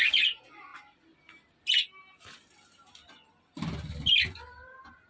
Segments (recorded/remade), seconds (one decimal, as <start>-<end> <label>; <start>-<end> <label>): 0.0-5.1 recorded